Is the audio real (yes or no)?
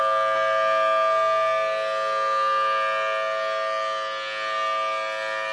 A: yes